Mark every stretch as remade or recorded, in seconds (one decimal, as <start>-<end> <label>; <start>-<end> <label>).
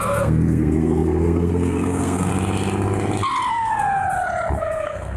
0.0-2.3 remade; 2.3-3.5 recorded; 3.5-4.0 remade; 4.0-4.6 recorded; 4.6-5.2 remade